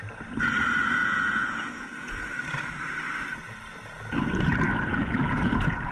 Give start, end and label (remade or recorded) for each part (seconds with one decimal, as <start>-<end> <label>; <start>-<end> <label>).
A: 0.0-1.0 recorded; 1.0-2.1 remade; 2.1-4.9 recorded; 4.9-5.9 remade